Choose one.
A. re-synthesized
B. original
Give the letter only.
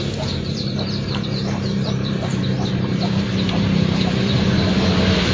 A